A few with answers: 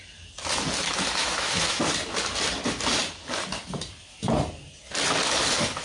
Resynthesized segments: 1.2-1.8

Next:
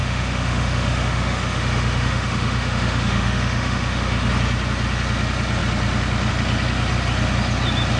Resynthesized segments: 0.0-4.3

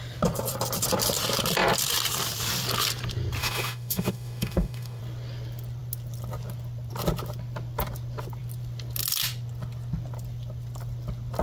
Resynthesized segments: 3.4-5.0